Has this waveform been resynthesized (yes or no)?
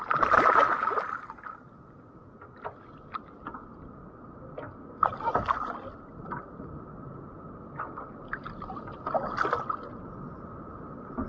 no